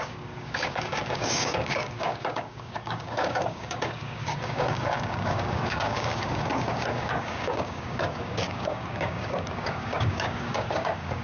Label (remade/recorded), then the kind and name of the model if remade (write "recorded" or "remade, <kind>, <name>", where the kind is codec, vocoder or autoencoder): remade, codec, DAC